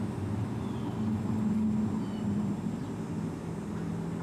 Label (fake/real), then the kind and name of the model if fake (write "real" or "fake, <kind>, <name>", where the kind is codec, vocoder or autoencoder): real